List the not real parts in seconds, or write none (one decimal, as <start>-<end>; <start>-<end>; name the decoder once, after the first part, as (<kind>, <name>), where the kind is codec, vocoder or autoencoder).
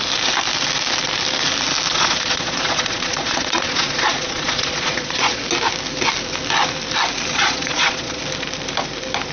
1.9-5.4 (vocoder, Vocos); 7.3-8.2